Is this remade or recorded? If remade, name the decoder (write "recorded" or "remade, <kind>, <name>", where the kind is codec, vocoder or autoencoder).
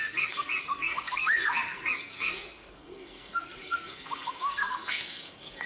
remade, codec, SNAC